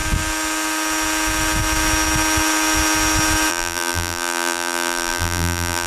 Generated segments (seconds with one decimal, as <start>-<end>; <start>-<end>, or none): 3.5-5.9